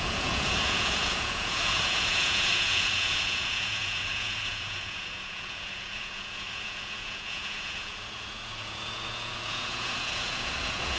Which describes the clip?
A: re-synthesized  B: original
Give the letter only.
A